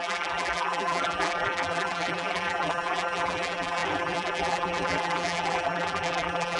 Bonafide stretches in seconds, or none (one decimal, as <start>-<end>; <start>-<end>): none